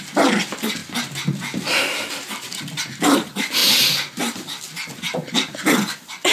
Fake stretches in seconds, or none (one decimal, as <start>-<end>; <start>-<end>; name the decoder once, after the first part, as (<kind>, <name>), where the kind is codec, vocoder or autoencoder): 0.0-0.8 (vocoder, BigVGAN v2); 2.6-3.6; 4.2-6.3